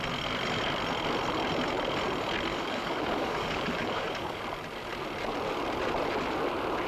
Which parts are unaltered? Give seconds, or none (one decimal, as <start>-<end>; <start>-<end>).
0.0-2.5; 4.4-6.9